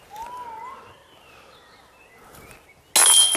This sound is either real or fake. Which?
real